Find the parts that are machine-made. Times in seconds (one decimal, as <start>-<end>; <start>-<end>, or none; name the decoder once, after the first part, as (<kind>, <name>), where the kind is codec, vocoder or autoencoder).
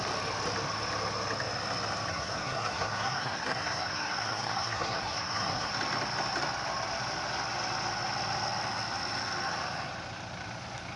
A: 2.1-5.7 (codec, SNAC)